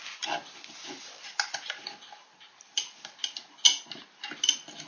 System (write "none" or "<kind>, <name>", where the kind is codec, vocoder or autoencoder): none